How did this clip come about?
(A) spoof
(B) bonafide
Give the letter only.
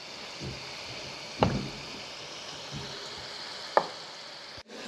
B